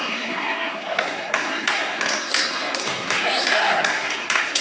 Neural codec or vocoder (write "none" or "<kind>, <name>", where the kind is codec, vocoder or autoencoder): codec, SNAC